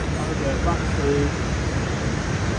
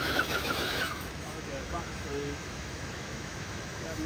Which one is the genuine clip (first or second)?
first